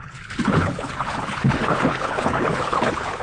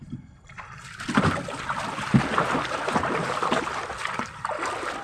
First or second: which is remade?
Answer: first